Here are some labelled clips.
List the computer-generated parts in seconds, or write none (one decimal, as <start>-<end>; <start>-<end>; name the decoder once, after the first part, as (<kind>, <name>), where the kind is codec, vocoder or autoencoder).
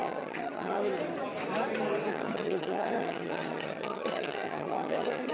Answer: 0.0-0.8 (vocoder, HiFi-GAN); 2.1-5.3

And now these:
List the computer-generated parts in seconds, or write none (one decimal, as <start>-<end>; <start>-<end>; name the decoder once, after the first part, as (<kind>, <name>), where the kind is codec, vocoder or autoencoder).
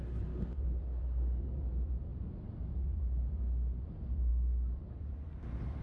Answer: none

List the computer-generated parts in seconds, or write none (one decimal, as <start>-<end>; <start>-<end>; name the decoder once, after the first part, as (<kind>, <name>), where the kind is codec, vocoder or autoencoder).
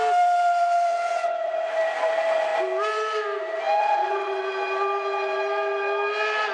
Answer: 0.9-1.7 (vocoder, WaveNeXt); 3.8-4.4